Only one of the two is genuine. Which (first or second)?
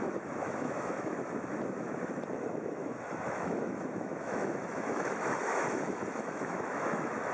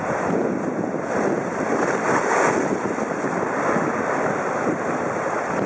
second